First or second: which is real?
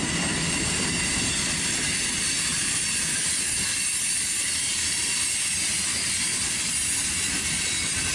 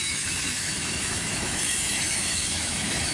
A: first